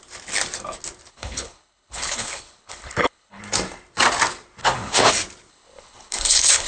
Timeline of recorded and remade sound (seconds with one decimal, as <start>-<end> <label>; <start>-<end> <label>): 0.0-1.1 recorded; 1.1-3.4 remade; 3.4-4.6 recorded; 4.6-5.1 remade; 5.1-5.5 recorded; 5.5-6.7 remade